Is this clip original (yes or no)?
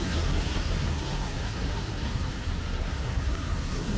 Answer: no